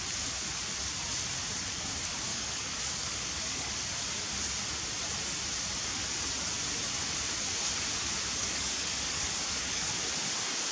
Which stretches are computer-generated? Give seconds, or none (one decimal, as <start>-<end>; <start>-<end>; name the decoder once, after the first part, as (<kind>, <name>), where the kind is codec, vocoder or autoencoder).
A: 2.3-3.7 (codec, DAC); 8.4-9.9